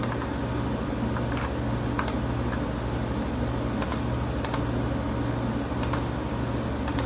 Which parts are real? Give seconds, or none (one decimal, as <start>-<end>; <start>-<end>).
0.0-7.1